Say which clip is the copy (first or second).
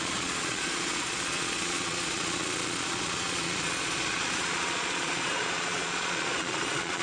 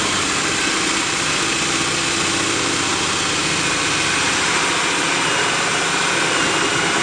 first